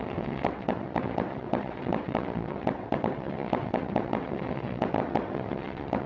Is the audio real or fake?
fake